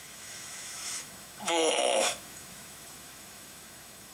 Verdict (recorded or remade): remade